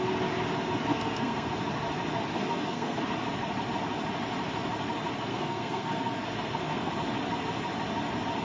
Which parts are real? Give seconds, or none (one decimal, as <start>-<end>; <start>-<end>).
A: 0.0-0.9; 1.6-2.3; 3.0-5.3; 6.9-8.4